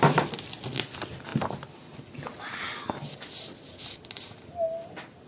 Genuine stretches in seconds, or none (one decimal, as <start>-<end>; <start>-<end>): 0.0-5.3